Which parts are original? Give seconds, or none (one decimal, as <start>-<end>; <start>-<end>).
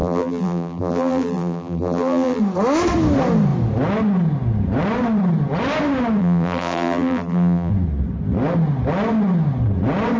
2.4-6.2; 7.7-10.2